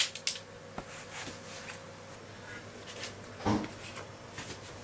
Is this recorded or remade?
recorded